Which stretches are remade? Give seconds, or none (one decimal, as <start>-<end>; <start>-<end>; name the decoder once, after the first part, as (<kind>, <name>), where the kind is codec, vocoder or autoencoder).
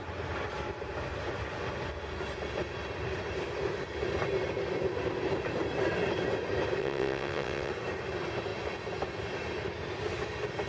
6.8-7.7 (vocoder, WaveNeXt)